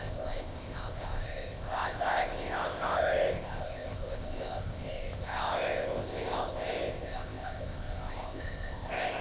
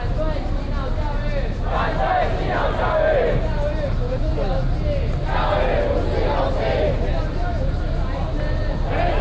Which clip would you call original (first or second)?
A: second